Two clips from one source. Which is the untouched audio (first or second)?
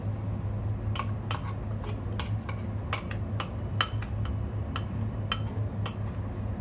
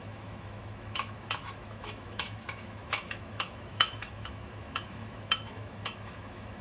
first